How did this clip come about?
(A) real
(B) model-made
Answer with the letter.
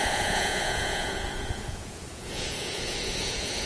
B